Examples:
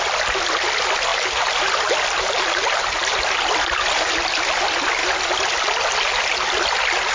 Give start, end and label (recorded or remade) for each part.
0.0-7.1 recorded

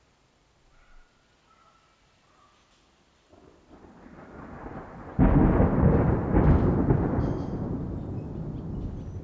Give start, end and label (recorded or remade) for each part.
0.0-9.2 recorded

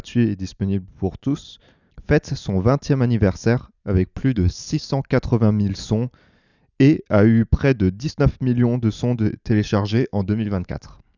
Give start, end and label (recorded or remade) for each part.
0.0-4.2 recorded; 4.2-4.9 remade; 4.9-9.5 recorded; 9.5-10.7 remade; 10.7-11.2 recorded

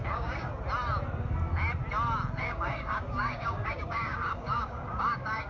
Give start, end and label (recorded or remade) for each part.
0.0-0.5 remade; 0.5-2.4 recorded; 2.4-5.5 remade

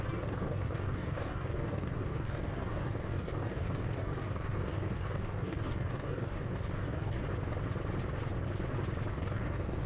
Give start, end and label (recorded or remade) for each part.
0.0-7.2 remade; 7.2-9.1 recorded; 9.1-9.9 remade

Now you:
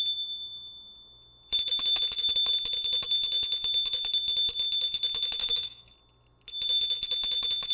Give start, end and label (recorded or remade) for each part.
0.0-5.4 recorded; 5.4-5.9 remade; 5.9-7.7 recorded

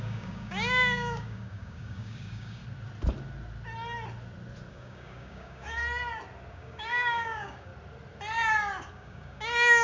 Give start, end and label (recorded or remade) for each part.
0.0-2.6 remade; 2.6-4.7 recorded; 4.7-5.8 remade; 5.8-6.5 recorded; 6.5-7.7 remade; 7.7-8.9 recorded; 8.9-9.8 remade

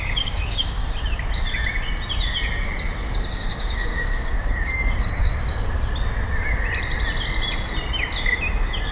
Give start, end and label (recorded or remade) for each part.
0.0-0.8 remade; 0.8-3.3 recorded; 3.3-5.3 remade; 5.3-8.9 recorded